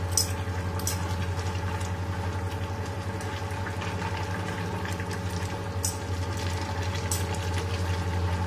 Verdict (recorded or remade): recorded